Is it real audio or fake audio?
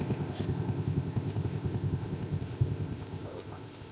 fake